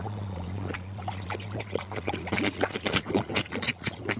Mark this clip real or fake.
fake